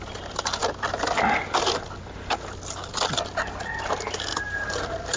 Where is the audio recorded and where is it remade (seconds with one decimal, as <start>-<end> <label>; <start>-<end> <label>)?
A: 0.0-5.2 recorded